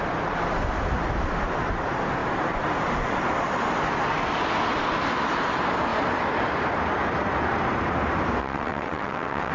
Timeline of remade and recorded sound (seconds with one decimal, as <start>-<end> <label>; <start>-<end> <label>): 0.0-8.4 recorded; 8.4-9.5 remade